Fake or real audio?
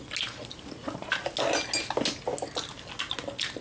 real